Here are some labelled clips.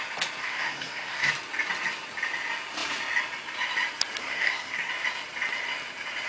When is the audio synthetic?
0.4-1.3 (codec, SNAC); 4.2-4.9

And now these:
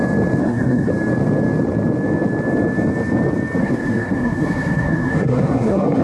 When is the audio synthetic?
0.4-0.9 (codec, SNAC); 3.6-6.0

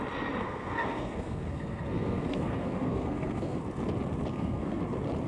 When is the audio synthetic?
0.4-3.6 (codec, SNAC); 4.3-4.8

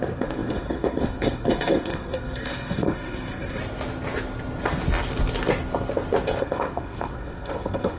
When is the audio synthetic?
0.0-3.6 (codec, SNAC); 6.4-8.0

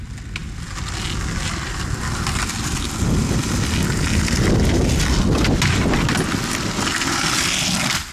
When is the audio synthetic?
none